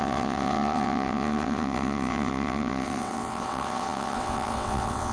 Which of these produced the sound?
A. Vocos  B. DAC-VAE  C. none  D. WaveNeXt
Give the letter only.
D